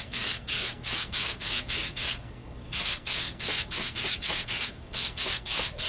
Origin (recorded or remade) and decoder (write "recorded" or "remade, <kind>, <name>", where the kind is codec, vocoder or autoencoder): remade, codec, SNAC